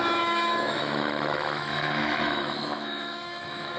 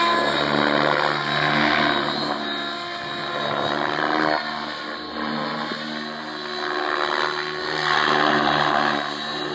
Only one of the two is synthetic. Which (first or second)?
first